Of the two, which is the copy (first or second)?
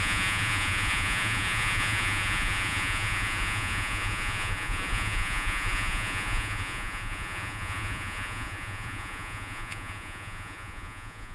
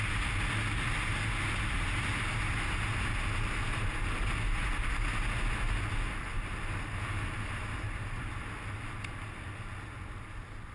first